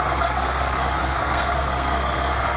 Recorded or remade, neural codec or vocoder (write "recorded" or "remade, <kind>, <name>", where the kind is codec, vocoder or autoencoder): remade, codec, SNAC